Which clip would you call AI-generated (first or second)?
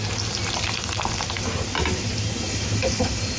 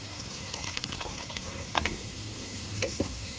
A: second